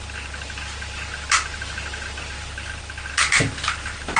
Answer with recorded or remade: recorded